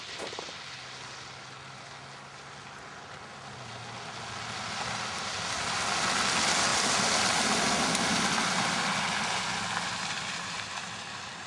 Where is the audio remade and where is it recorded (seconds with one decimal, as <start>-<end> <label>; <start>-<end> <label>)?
0.0-11.5 recorded

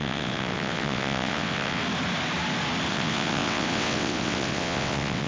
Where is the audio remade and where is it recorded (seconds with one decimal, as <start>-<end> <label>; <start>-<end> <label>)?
0.0-1.8 remade; 1.8-2.9 recorded; 2.9-5.3 remade

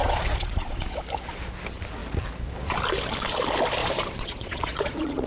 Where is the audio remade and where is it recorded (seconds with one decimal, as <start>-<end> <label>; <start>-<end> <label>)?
0.0-1.0 remade; 1.0-3.8 recorded; 3.8-5.3 remade

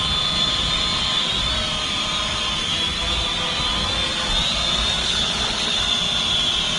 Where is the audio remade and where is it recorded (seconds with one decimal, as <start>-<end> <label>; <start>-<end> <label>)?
0.0-5.0 recorded; 5.0-5.8 remade; 5.8-6.8 recorded

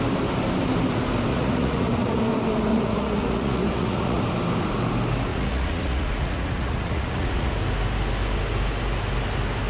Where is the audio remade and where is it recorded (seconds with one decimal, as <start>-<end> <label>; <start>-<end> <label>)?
0.0-1.3 recorded; 1.3-2.2 remade; 2.2-2.7 recorded; 2.7-4.2 remade; 4.2-5.3 recorded; 5.3-7.5 remade; 7.5-9.7 recorded